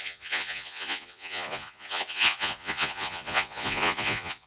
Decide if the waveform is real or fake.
fake